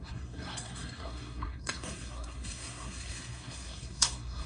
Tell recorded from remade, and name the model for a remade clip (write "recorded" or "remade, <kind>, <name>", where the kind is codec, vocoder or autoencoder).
remade, codec, SNAC